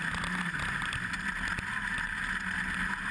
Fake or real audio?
real